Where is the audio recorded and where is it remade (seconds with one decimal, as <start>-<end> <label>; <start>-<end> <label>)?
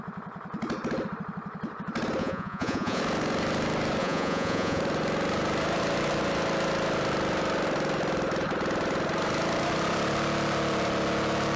0.0-2.2 recorded; 2.2-3.0 remade; 3.0-4.0 recorded; 4.0-4.8 remade; 4.8-11.6 recorded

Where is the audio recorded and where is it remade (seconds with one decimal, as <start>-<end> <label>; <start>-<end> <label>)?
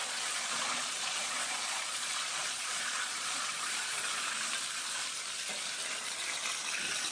0.0-4.3 remade; 4.3-7.1 recorded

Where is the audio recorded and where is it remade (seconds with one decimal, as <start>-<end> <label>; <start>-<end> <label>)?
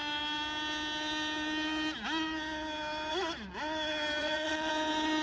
0.0-4.2 recorded; 4.2-4.7 remade; 4.7-5.2 recorded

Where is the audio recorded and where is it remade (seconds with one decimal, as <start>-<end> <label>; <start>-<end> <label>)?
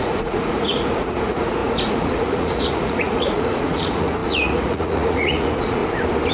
0.0-5.8 remade; 5.8-6.3 recorded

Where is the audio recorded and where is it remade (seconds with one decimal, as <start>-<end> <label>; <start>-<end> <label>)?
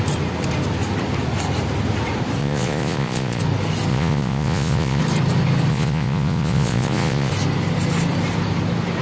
0.0-2.4 recorded; 2.4-3.4 remade; 3.4-3.9 recorded; 3.9-5.0 remade; 5.0-5.7 recorded; 5.7-7.3 remade; 7.3-9.0 recorded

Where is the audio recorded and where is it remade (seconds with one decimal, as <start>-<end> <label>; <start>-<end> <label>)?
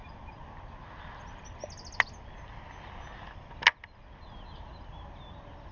0.0-5.7 recorded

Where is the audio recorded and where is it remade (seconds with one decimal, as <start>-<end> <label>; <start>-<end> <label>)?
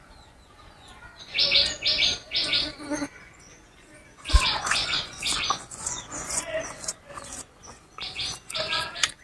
0.0-9.2 remade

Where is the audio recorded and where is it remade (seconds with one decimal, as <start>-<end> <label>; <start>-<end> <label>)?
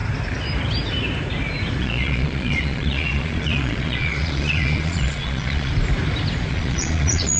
0.0-1.8 recorded; 1.8-5.7 remade; 5.7-6.5 recorded; 6.5-7.4 remade